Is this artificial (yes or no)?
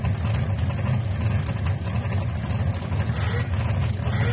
no